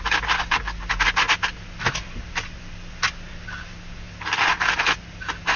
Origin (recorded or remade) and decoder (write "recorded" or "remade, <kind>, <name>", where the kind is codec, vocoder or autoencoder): recorded